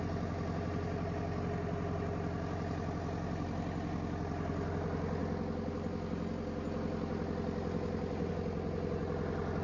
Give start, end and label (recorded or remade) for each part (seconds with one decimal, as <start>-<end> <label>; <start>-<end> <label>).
0.0-9.6 recorded